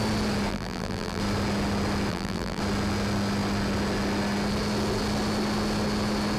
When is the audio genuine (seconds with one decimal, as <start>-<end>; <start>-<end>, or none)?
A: 0.0-0.5; 1.2-2.1; 2.6-6.4